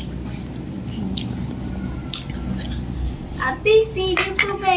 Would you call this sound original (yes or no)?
yes